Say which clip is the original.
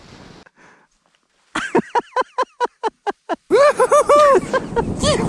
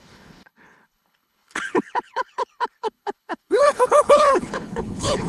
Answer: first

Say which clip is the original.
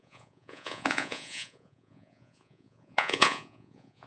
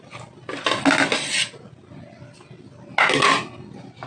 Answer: second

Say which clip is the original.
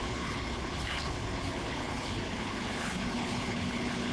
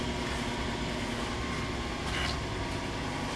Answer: second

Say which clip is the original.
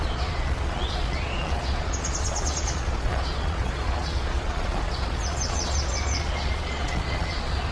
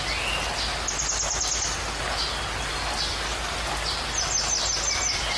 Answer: second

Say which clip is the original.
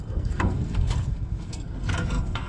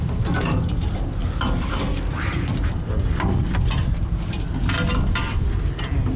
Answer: second